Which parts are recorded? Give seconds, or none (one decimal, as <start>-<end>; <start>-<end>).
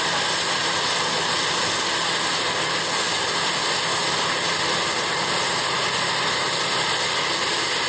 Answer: 0.0-7.9